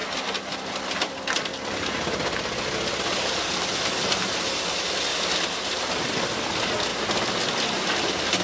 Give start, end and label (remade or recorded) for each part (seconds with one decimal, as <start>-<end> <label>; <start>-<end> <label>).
0.0-0.7 recorded; 0.7-1.5 remade; 1.5-3.3 recorded; 3.3-5.1 remade; 5.1-6.4 recorded; 6.4-6.9 remade; 6.9-7.9 recorded; 7.9-8.4 remade